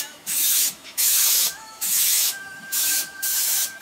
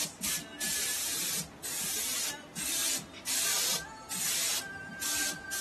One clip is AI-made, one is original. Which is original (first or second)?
second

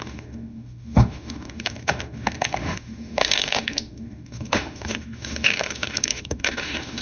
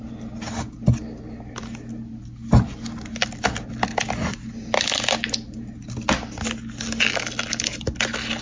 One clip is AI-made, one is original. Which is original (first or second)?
second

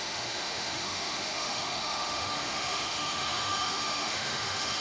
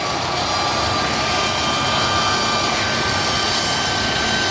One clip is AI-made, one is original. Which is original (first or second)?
second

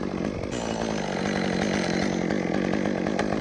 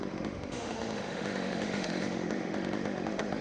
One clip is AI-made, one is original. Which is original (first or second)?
first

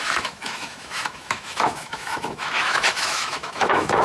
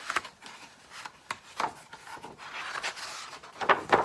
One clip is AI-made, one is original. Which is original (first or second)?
second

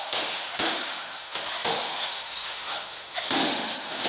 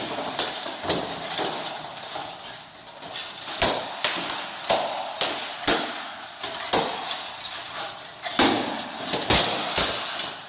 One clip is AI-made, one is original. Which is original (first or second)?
second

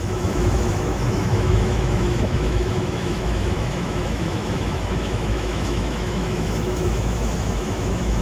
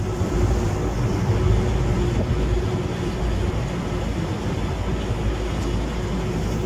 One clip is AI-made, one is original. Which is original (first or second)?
second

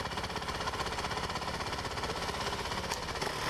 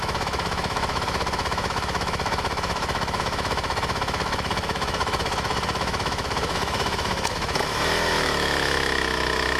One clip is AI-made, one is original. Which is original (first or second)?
first